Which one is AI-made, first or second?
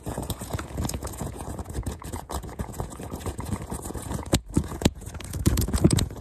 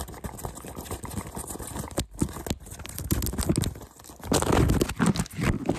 first